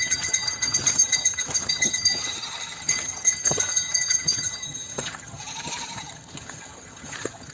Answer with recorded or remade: remade